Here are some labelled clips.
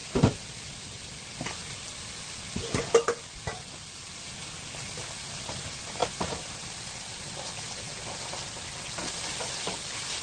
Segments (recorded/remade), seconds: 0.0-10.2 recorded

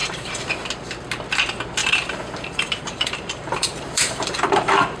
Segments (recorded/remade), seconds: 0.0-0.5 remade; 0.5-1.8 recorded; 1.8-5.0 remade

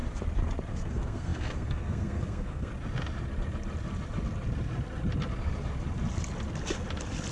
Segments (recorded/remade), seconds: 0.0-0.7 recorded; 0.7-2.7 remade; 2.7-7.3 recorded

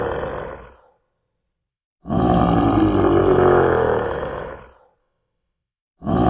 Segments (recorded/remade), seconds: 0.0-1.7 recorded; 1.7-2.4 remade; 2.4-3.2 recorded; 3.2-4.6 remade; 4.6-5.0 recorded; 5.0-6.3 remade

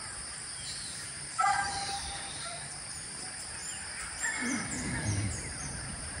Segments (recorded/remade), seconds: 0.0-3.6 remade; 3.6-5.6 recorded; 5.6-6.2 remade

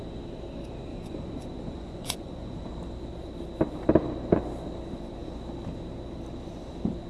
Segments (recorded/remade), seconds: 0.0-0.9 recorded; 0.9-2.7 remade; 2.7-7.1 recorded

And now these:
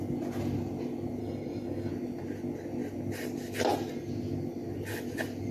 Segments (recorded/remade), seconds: 0.0-1.2 recorded; 1.2-1.9 remade; 1.9-5.5 recorded

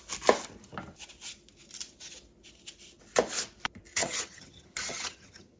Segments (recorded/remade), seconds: 0.0-4.0 recorded; 4.0-5.6 remade